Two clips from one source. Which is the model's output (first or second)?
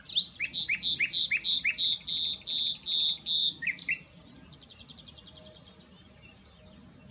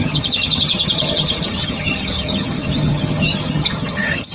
second